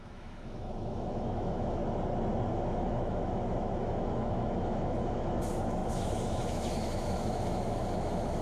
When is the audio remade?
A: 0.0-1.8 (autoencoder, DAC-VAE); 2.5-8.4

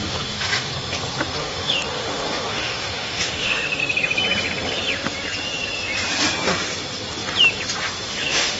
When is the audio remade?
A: 0.0-0.7 (autoencoder, DAC-VAE); 1.4-3.8; 8.1-8.6

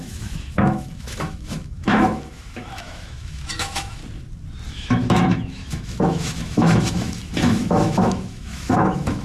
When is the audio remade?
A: 0.0-4.0 (autoencoder, DAC-VAE); 4.7-9.2

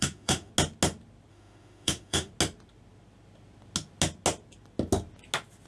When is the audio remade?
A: 0.0-0.5 (autoencoder, DAC-VAE); 1.3-2.3